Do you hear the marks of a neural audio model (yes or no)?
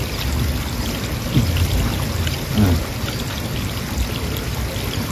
no